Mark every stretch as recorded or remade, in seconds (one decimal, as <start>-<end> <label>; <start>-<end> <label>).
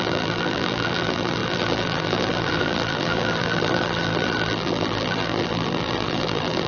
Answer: 0.0-6.7 remade